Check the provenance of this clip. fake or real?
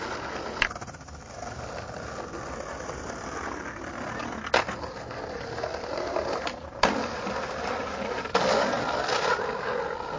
real